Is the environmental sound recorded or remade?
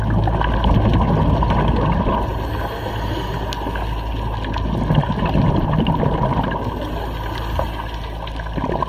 recorded